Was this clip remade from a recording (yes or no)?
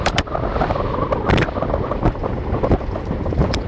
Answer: yes